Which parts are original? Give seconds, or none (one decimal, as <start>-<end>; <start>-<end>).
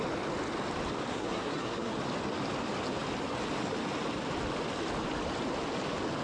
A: 0.0-1.1; 1.9-6.2